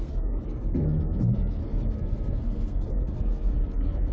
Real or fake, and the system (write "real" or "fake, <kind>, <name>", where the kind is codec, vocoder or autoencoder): fake, codec, SNAC